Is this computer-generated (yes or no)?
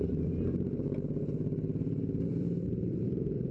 yes